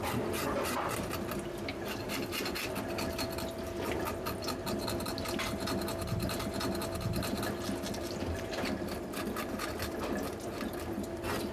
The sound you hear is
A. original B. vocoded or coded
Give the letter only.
A